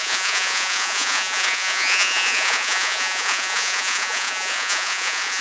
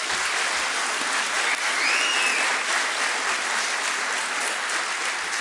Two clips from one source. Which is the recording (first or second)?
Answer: second